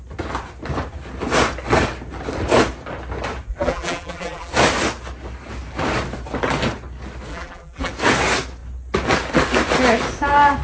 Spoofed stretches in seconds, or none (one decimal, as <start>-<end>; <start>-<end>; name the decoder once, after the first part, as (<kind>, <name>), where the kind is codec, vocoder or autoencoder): 3.5-4.5 (vocoder, BigVGAN v2); 7.3-7.9